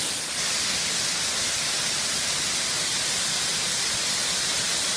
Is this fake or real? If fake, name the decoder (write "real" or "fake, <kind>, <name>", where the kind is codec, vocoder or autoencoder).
real